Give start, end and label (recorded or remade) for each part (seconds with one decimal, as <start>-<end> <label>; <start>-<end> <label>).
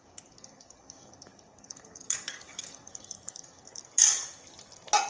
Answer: 0.0-4.2 remade; 4.2-5.1 recorded